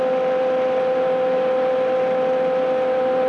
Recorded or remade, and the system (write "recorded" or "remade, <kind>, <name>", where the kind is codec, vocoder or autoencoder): recorded